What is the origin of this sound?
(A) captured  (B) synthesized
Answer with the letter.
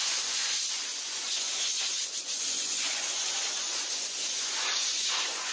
B